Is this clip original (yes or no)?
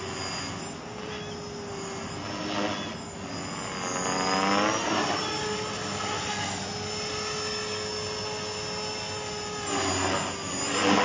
yes